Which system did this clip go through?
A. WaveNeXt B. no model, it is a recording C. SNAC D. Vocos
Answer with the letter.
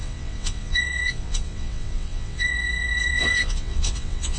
A